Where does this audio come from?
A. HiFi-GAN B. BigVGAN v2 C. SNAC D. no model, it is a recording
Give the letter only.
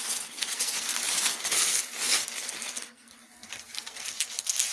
C